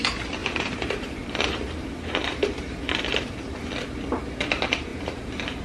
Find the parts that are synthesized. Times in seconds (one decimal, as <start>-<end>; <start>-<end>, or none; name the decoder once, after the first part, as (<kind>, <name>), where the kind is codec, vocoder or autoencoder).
0.4-3.7 (vocoder, BigVGAN v2); 4.9-5.6